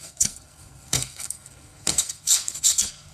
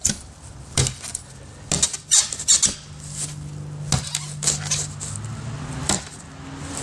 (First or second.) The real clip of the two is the second